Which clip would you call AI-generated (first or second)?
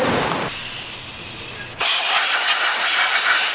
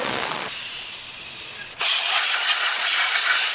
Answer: second